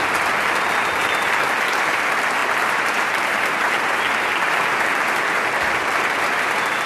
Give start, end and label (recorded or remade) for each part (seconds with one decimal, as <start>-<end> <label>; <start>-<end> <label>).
0.0-6.9 recorded